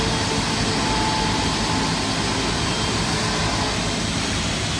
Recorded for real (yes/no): yes